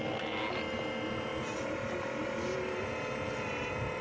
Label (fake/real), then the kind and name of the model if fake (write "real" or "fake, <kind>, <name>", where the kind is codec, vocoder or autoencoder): real